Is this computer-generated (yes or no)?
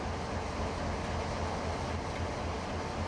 no